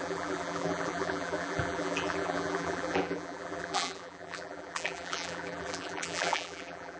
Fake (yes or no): yes